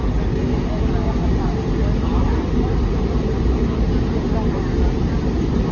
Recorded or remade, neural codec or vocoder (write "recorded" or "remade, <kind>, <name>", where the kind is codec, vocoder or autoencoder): recorded